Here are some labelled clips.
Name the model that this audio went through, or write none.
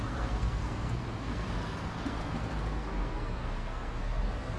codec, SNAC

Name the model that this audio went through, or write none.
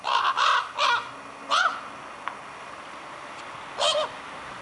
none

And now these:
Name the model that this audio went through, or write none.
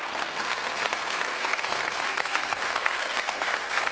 codec, SNAC